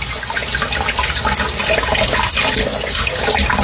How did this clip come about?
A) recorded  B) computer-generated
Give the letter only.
A